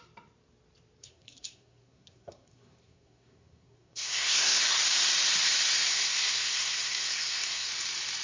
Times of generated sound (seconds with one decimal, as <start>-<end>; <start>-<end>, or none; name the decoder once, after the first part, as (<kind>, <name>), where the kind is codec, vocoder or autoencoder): 1.0-4.6 (codec, SNAC); 5.7-7.7